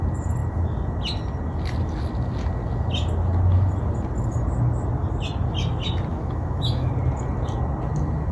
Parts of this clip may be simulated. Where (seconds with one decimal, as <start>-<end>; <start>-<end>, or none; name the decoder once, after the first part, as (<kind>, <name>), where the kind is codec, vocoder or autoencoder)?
6.1-6.9 (autoencoder, DAC-VAE)

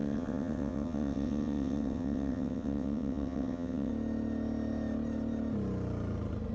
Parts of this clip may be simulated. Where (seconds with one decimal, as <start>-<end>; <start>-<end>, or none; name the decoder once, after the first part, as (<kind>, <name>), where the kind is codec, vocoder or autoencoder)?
0.0-3.9 (vocoder, WaveNeXt)